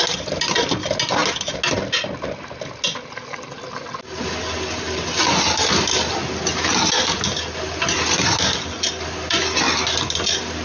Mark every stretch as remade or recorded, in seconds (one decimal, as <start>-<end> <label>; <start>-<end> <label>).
0.0-10.6 recorded